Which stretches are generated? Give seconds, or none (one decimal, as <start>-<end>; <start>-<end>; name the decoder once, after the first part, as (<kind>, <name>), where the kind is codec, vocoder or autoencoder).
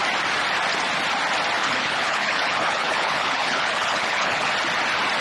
1.6-4.5 (codec, HILCodec)